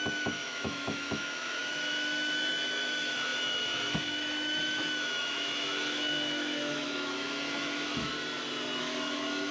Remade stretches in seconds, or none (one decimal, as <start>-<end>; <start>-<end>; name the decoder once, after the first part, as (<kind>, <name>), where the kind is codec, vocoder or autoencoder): 0.0-8.1 (autoencoder, DAC-VAE); 8.8-9.5